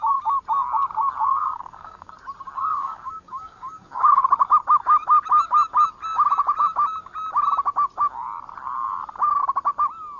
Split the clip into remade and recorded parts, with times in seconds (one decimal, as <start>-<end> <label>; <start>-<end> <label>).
0.0-1.4 recorded; 1.4-2.1 remade; 2.1-2.7 recorded; 2.7-4.2 remade; 4.2-10.2 recorded